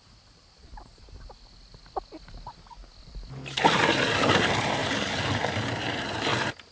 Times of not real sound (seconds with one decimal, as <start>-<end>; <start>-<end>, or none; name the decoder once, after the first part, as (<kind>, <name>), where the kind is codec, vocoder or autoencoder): none